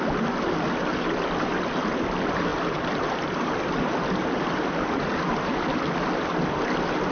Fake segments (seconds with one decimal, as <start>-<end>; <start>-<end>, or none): none